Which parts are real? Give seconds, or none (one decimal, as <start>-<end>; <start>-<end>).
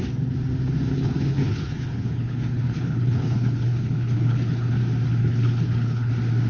0.0-0.9; 4.8-5.2; 6.1-6.5